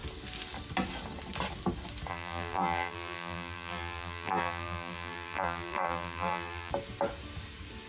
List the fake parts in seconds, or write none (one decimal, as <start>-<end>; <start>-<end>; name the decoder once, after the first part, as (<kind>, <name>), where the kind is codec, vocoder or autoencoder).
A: 2.1-6.7 (vocoder, BigVGAN v2)